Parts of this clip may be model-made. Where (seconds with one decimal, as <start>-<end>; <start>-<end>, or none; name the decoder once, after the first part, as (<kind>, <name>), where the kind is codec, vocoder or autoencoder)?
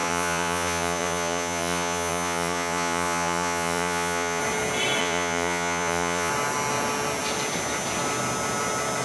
0.0-4.4 (vocoder, Vocos); 5.0-6.3